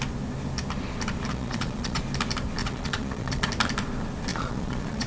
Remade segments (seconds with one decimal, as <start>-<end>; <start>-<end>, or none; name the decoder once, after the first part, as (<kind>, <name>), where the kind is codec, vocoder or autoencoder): 1.3-2.0 (vocoder, Vocos); 2.6-3.5; 4.3-5.1